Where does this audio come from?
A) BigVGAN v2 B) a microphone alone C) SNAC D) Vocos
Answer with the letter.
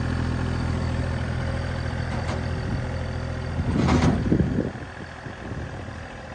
B